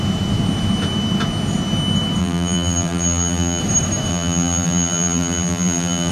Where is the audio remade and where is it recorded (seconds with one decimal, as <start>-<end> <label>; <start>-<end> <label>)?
0.0-2.2 recorded; 2.2-3.6 remade; 3.6-4.1 recorded; 4.1-6.1 remade